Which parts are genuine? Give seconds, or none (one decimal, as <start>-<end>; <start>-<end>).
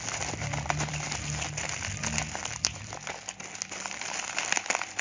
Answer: 0.0-5.0